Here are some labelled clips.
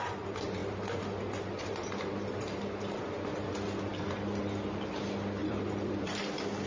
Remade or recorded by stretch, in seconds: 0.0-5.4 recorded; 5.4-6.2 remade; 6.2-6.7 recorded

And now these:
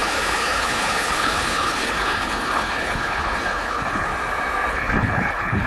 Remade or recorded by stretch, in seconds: 0.0-4.1 remade; 4.1-4.7 recorded; 4.7-5.7 remade

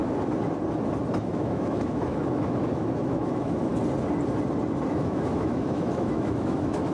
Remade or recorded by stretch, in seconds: 0.0-1.2 recorded; 1.2-3.7 remade; 3.7-4.9 recorded; 4.9-6.9 remade

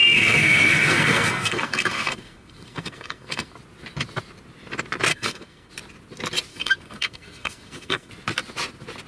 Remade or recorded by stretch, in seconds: 0.0-3.5 remade; 3.5-5.1 recorded; 5.1-5.7 remade; 5.7-6.5 recorded; 6.5-8.1 remade; 8.1-9.1 recorded

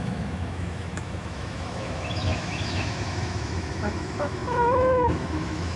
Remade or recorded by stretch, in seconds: 0.0-5.8 remade